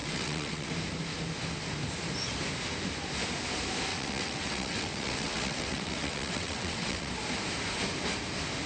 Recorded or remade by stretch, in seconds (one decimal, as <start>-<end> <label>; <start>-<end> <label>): 0.0-0.7 remade; 0.7-3.9 recorded; 3.9-7.1 remade; 7.1-8.7 recorded